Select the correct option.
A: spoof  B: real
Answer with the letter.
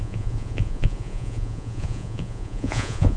A